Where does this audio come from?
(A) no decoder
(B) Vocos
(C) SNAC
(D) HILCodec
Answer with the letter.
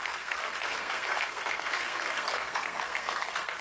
C